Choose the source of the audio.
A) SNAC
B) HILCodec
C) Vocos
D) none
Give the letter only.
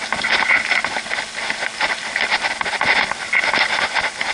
D